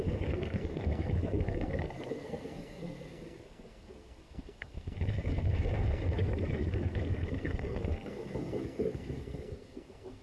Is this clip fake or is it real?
fake